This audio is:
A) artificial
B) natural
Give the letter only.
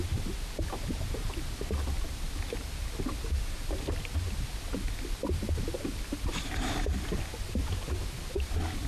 B